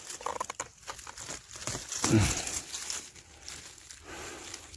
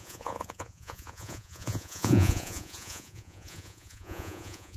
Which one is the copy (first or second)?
second